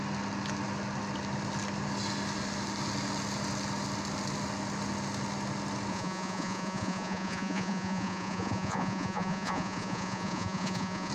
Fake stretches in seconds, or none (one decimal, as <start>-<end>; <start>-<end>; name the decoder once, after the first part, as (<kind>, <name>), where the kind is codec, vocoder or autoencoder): 5.9-11.1 (vocoder, Vocos)